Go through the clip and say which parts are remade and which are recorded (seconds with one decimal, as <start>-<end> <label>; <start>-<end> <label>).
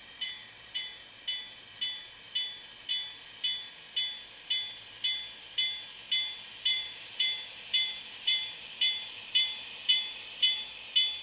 0.0-1.0 remade; 1.0-6.7 recorded; 6.7-10.7 remade; 10.7-11.2 recorded